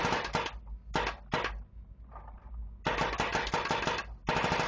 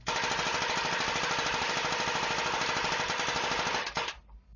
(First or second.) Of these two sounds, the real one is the first